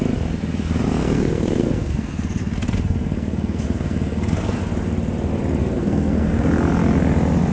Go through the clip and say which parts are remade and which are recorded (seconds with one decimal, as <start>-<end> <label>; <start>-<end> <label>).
0.0-1.0 recorded; 1.0-4.6 remade; 4.6-5.6 recorded; 5.6-6.5 remade; 6.5-7.5 recorded